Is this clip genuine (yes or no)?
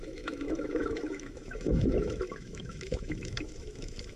no